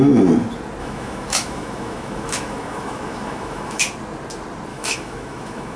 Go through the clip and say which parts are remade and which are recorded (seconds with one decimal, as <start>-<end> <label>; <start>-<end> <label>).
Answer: 0.0-0.8 recorded; 0.8-3.8 remade; 3.8-4.7 recorded; 4.7-5.8 remade